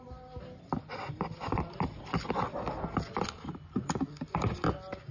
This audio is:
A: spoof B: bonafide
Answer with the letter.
B